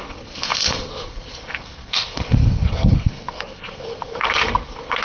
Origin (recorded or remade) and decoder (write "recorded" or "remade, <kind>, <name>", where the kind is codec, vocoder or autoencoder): remade, codec, SNAC